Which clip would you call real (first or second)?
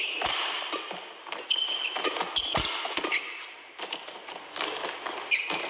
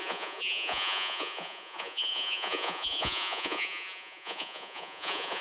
first